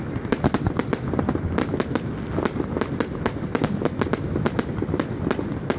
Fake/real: real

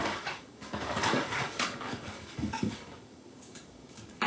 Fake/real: fake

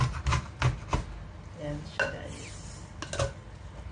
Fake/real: real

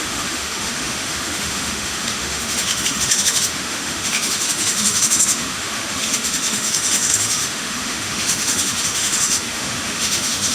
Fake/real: fake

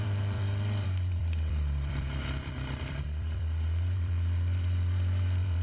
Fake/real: fake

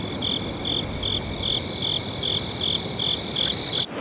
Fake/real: real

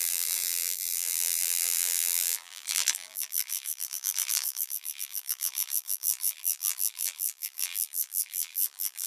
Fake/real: fake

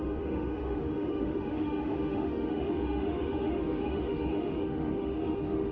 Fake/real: fake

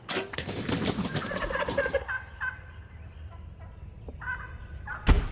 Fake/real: real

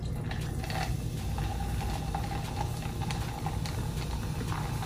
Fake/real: real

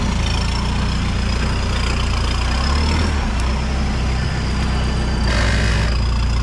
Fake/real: real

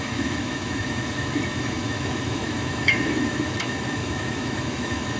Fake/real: fake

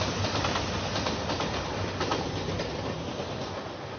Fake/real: real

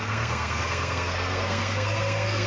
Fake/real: fake